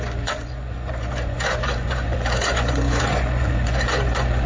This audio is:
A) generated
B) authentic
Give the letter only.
A